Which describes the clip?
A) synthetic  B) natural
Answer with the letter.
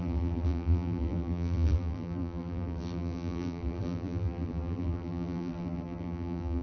A